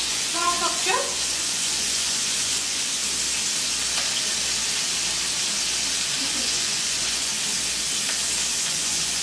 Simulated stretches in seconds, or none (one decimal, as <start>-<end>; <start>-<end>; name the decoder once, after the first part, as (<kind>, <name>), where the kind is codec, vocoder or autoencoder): 0.0-3.0 (vocoder, Vocos); 6.3-7.3; 8.6-9.2